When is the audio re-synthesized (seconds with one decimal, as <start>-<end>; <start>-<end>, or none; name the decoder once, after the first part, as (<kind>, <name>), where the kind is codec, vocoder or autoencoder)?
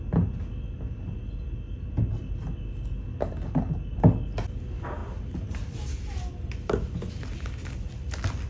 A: none